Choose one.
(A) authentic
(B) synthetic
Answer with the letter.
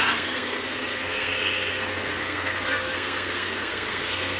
B